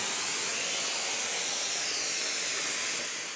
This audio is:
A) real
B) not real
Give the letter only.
A